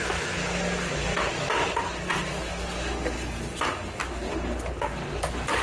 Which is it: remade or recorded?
recorded